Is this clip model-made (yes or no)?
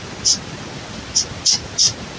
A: no